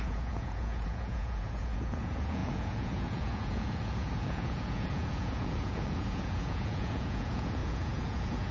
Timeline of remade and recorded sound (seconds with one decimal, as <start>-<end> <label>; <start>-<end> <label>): 0.0-8.5 remade